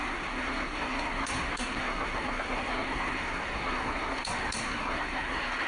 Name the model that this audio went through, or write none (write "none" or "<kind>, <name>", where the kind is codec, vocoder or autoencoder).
codec, SNAC